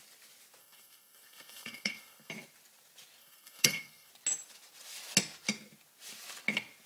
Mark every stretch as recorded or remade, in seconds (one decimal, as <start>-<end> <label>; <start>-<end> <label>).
0.0-0.6 recorded; 0.6-2.3 remade; 2.3-3.2 recorded; 3.2-4.1 remade; 4.1-6.9 recorded